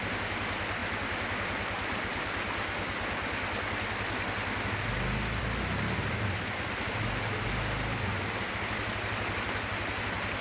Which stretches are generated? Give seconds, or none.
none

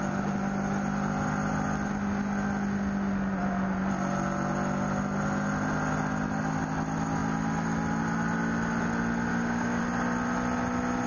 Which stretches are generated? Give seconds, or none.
9.3-9.8

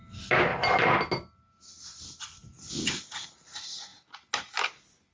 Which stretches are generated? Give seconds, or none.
none